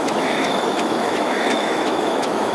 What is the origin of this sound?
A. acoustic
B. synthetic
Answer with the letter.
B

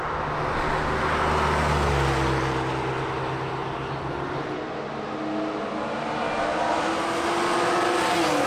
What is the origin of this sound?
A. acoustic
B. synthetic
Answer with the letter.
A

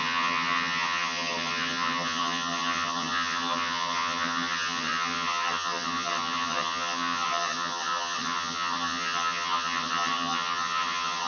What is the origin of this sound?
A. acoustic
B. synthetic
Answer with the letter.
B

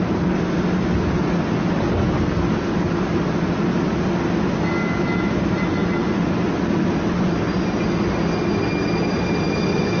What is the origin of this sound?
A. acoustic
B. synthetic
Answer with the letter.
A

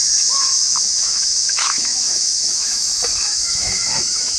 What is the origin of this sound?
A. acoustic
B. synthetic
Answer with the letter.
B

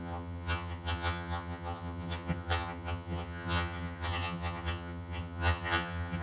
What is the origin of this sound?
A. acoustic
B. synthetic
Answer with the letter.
B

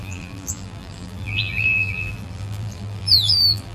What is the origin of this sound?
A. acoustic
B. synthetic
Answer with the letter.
B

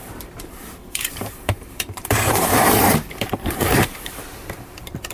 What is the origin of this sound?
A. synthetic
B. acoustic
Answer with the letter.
A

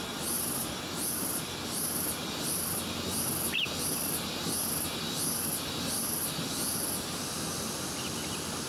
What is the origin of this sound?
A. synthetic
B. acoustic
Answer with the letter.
A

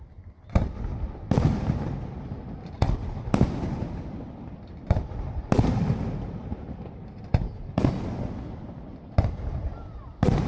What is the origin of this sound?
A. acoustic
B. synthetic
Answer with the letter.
A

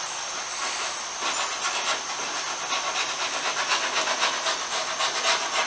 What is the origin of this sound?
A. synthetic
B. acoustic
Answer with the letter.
B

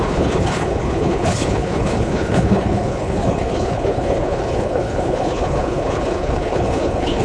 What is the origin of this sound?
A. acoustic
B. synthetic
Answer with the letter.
B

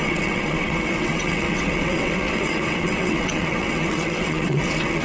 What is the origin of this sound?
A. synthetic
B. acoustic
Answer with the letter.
A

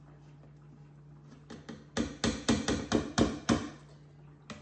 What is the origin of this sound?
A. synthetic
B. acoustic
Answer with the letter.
B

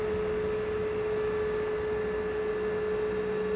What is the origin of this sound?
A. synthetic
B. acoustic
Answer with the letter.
B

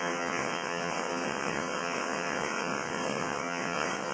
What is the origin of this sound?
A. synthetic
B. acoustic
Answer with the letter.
A